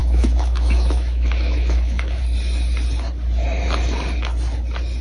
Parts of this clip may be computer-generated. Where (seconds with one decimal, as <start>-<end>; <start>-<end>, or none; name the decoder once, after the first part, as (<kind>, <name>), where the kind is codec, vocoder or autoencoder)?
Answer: 0.0-2.2 (autoencoder, DAC-VAE)